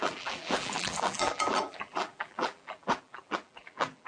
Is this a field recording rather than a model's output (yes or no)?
no